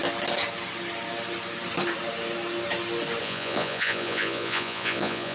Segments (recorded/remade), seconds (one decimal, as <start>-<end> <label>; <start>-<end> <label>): 0.0-3.2 recorded; 3.2-5.3 remade

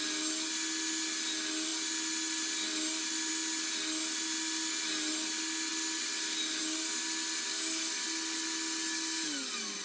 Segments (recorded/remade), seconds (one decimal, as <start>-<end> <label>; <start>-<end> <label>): 0.0-9.8 recorded

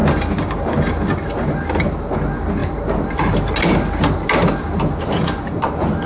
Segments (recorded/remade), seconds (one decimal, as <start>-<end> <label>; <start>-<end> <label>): 0.0-0.8 remade; 0.8-6.1 recorded

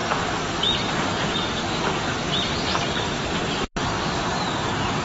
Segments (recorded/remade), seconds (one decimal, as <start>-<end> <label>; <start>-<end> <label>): 0.0-5.0 recorded

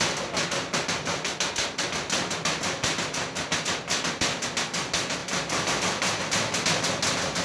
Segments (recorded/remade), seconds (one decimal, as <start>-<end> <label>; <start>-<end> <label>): 0.0-7.4 recorded

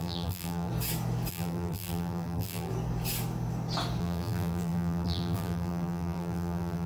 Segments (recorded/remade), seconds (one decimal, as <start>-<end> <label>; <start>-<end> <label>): 0.0-0.7 remade; 0.7-1.3 recorded; 1.3-2.7 remade; 2.7-4.0 recorded; 4.0-6.9 remade

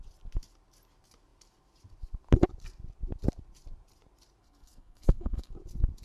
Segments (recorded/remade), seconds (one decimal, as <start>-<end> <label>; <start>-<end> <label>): 0.0-4.4 recorded; 4.4-5.5 remade; 5.5-6.0 recorded

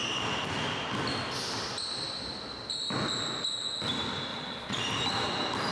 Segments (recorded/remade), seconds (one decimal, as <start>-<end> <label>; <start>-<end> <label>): 0.0-4.3 recorded; 4.3-4.8 remade; 4.8-5.7 recorded